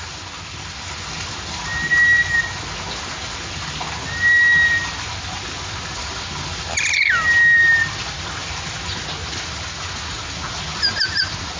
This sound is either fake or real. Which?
real